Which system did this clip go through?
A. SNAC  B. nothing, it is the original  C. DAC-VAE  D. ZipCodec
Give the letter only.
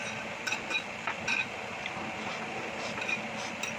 B